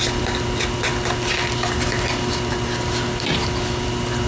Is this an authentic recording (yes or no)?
yes